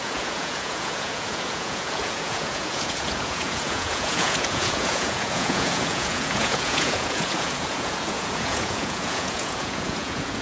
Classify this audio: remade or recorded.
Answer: remade